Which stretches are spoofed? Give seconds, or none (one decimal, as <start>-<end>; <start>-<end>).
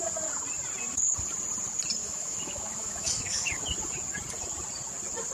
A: 2.0-3.5